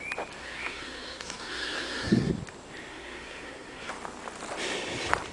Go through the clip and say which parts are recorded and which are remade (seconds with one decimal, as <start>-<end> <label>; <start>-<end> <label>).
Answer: 0.0-0.4 recorded; 0.4-2.3 remade; 2.3-2.9 recorded; 2.9-3.9 remade; 3.9-5.3 recorded